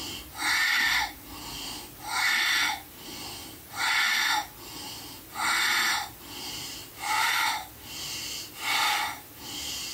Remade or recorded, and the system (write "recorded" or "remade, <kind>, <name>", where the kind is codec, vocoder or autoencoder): recorded